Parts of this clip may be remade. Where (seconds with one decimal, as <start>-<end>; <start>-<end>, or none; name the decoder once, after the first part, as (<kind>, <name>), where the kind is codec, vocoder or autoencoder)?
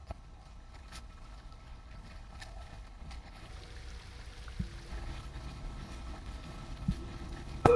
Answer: 0.0-3.5 (codec, HILCodec); 4.9-7.8